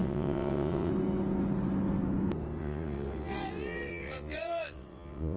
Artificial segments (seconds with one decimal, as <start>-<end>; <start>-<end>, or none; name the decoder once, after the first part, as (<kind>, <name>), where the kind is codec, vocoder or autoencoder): 0.0-0.9 (vocoder, WaveNeXt); 2.6-5.4